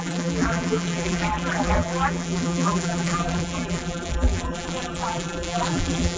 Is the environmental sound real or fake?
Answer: fake